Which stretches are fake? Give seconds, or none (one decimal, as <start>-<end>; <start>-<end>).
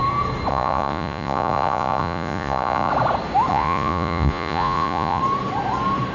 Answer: 0.5-2.9; 3.5-5.2